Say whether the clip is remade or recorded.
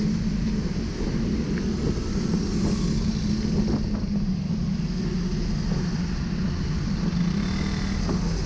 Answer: recorded